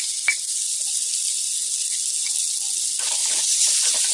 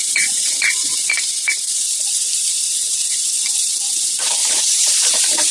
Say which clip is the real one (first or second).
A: first